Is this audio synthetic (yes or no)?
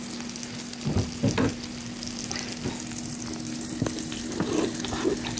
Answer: no